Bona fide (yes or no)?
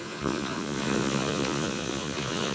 no